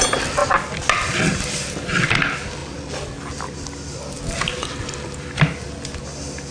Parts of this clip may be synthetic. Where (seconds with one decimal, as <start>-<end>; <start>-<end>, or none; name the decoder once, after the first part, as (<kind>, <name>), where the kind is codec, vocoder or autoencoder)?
2.6-3.2 (vocoder, BigVGAN v2)